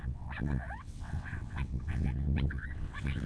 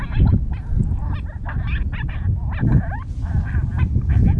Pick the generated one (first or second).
first